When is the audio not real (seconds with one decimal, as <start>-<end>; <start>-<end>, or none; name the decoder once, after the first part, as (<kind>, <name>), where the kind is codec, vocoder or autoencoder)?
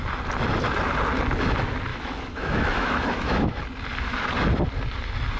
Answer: 1.9-3.6 (autoencoder, DAC-VAE)